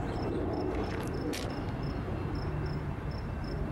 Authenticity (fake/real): fake